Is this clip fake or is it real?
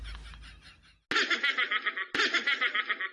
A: real